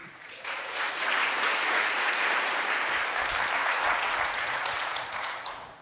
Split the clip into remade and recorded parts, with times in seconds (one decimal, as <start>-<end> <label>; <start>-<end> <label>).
0.0-2.2 remade; 2.2-3.6 recorded; 3.6-5.8 remade